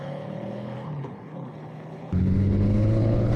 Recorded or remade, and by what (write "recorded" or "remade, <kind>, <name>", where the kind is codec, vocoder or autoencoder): remade, codec, HILCodec